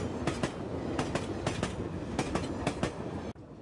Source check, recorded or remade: recorded